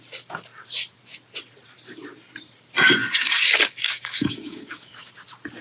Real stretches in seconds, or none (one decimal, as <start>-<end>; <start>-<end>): 0.0-3.0; 5.1-5.6